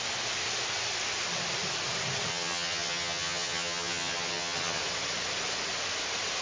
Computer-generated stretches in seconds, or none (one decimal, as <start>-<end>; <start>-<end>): 2.3-4.8